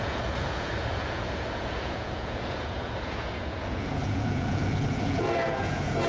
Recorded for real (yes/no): no